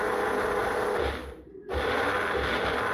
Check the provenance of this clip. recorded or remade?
recorded